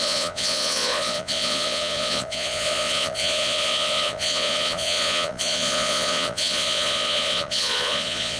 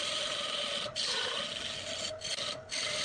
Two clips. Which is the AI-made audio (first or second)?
first